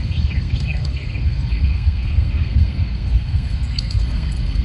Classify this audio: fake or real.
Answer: fake